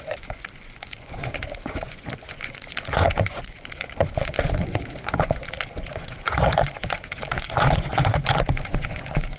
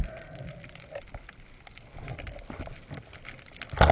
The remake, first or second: first